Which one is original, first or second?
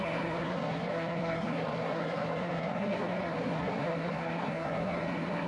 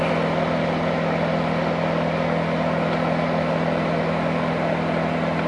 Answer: second